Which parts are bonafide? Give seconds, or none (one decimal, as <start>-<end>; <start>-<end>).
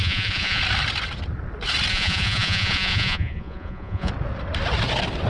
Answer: 0.6-1.9; 4.1-5.3